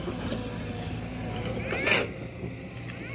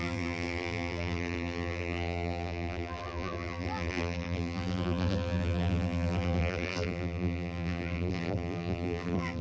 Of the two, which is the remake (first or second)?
second